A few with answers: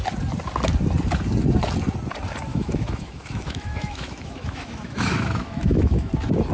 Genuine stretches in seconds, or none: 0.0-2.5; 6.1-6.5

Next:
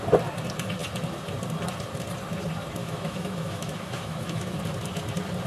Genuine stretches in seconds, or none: 0.0-2.8; 4.6-5.5